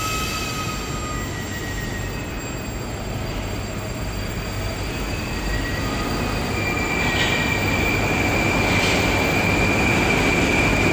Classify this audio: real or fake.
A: real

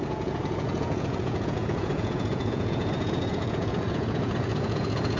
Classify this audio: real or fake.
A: fake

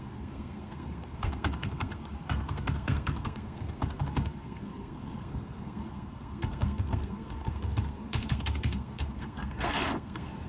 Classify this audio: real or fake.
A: fake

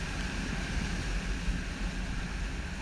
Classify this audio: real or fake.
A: real